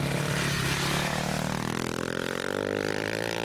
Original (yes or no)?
yes